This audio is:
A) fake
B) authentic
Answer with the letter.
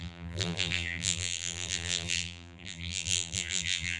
A